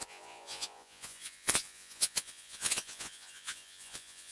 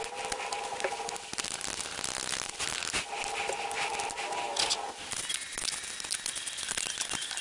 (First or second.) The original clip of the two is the second